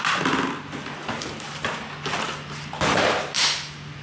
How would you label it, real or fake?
real